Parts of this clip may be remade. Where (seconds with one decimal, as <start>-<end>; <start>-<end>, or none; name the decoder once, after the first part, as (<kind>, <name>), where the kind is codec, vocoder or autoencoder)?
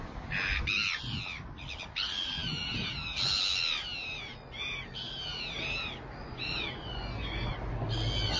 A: 6.2-7.5 (vocoder, Vocos)